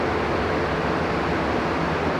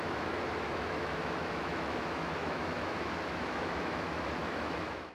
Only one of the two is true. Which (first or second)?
first